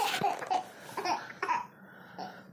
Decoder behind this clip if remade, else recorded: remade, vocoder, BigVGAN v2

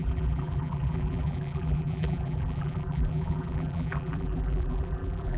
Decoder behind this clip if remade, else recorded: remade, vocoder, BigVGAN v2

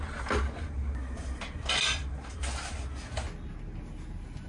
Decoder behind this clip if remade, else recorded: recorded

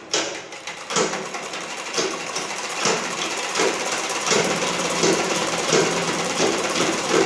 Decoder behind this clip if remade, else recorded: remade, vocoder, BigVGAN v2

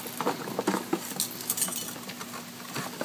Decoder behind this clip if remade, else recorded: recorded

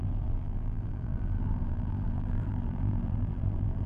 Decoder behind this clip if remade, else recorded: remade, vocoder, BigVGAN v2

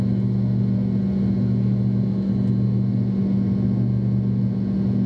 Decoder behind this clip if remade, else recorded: recorded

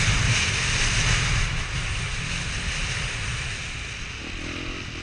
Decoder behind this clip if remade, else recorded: recorded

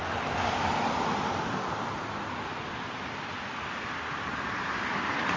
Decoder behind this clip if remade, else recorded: remade, vocoder, BigVGAN v2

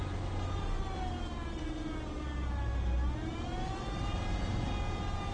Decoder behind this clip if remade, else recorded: recorded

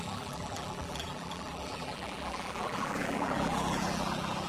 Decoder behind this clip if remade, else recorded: remade, vocoder, BigVGAN v2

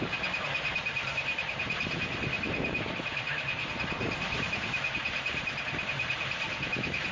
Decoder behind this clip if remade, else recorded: remade, vocoder, BigVGAN v2